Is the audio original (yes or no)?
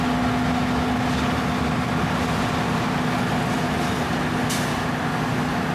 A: yes